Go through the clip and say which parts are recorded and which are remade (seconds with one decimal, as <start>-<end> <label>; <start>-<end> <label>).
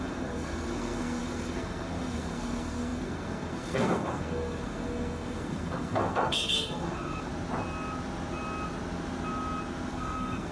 0.0-7.3 remade; 7.3-9.9 recorded; 9.9-10.5 remade